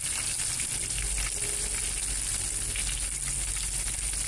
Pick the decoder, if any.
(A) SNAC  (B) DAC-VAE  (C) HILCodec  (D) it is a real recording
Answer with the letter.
D